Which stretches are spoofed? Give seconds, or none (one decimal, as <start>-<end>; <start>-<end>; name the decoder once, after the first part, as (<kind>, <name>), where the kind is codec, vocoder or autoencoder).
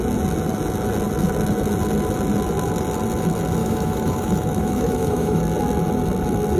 3.6-5.4 (autoencoder, DAC-VAE)